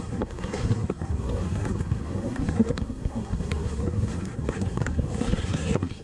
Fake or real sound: fake